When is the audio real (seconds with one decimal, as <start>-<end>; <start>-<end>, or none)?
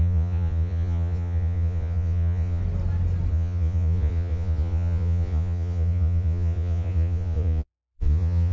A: 2.6-3.3